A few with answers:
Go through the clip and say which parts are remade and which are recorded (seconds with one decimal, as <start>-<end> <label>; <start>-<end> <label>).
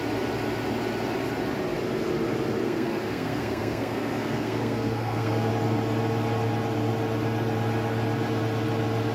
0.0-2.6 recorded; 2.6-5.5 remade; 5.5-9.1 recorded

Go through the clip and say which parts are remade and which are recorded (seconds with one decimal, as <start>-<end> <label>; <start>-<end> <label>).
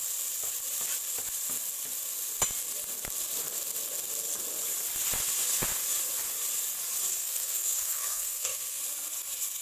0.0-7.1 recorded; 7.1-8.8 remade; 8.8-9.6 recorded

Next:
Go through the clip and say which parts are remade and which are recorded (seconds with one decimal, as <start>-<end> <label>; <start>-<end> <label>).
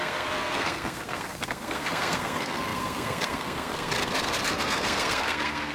0.0-5.7 remade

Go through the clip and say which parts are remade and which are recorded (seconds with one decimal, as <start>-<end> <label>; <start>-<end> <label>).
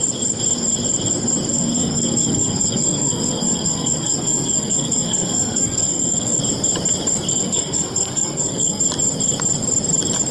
0.0-1.5 recorded; 1.5-6.4 remade; 6.4-7.3 recorded; 7.3-8.8 remade; 8.8-10.3 recorded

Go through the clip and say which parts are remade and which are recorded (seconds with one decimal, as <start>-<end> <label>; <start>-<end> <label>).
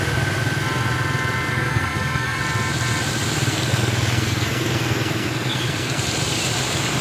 0.0-1.5 recorded; 1.5-2.4 remade; 2.4-3.5 recorded; 3.5-6.0 remade; 6.0-7.0 recorded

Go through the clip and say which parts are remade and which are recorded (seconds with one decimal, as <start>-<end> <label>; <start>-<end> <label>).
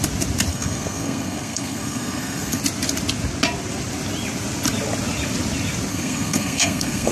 0.0-0.5 recorded; 0.5-2.6 remade; 2.6-5.9 recorded; 5.9-7.1 remade